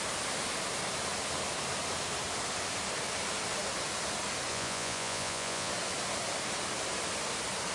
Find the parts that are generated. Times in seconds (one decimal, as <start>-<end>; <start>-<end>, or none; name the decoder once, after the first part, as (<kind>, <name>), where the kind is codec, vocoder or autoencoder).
4.5-5.7 (vocoder, Vocos)